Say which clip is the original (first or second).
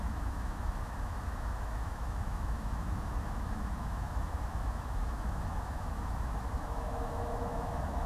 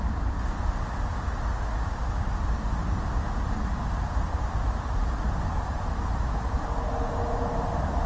second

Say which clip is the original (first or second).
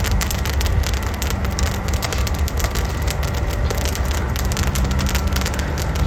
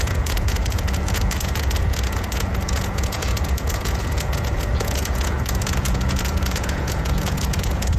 first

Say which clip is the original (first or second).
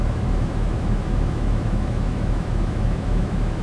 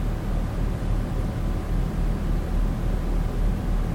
second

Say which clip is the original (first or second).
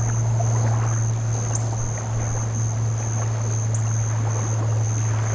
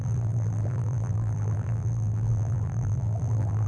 first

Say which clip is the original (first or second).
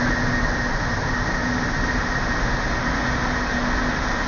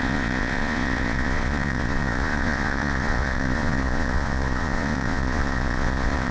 first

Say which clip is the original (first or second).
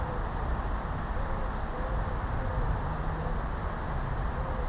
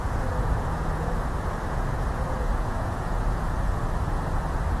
first